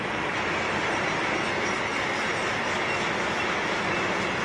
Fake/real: real